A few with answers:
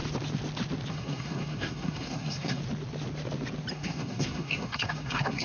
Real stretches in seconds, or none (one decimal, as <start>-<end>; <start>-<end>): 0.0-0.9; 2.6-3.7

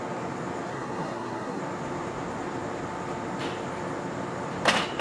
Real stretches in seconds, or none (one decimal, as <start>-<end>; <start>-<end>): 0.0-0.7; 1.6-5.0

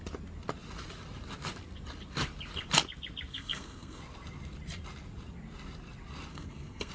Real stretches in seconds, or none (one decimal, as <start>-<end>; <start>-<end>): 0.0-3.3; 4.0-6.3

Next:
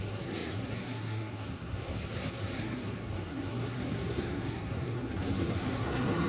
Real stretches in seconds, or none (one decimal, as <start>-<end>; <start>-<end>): none

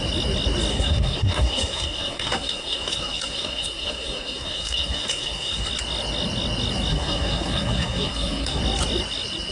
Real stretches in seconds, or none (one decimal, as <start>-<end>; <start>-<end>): 0.0-0.7; 5.7-6.9; 8.6-9.5